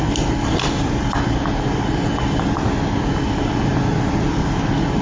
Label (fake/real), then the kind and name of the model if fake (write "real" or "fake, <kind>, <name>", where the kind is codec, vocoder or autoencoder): real